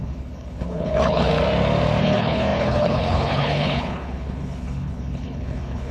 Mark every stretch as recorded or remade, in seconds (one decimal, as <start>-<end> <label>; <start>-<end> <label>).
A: 0.0-1.3 remade; 1.3-2.0 recorded; 2.0-5.9 remade